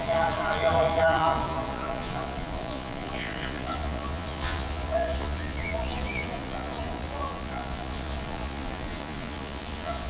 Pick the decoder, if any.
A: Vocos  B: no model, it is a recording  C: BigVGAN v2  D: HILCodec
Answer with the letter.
A